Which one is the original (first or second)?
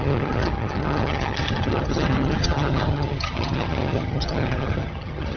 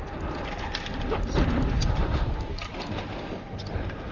second